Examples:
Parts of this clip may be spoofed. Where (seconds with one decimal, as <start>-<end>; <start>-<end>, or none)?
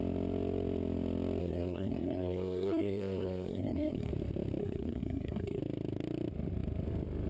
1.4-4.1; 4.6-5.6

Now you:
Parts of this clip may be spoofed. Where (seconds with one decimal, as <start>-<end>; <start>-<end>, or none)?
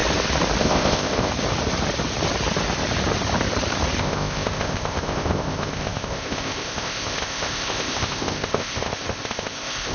0.6-1.3; 4.0-9.9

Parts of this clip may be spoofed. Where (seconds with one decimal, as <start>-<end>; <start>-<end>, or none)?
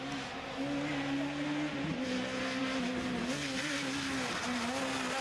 none